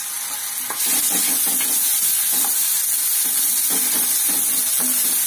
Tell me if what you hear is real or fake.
real